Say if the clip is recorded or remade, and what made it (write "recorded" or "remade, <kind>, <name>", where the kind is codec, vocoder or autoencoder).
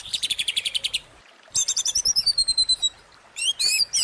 remade, vocoder, BigVGAN v2